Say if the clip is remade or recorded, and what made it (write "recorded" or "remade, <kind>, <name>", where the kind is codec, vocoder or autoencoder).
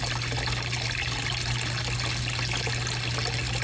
recorded